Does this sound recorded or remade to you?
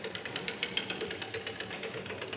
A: remade